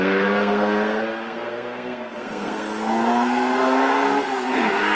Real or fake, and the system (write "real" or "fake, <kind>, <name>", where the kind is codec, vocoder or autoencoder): fake, codec, SNAC